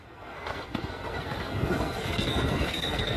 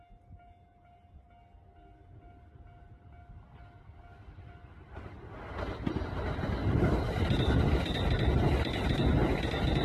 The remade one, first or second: first